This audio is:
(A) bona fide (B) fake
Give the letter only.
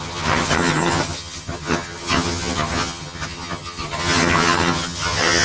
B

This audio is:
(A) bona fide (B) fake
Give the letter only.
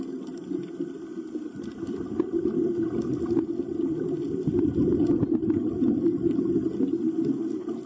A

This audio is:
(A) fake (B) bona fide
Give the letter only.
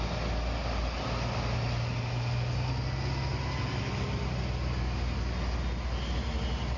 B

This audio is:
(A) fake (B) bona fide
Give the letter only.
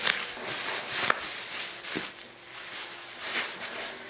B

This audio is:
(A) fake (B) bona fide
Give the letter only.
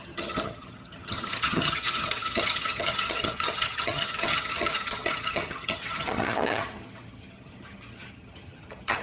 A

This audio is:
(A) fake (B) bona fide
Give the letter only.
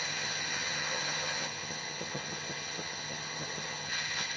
A